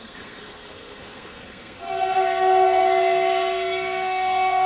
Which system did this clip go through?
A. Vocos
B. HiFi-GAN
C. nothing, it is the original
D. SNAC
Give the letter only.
D